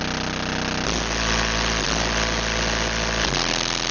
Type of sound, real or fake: real